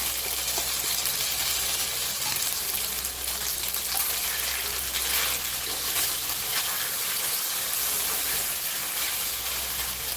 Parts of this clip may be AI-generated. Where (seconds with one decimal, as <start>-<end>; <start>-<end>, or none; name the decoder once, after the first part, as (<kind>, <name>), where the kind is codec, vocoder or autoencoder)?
5.5-6.8 (autoencoder, DAC-VAE)